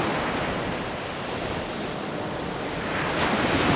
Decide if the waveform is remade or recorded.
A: recorded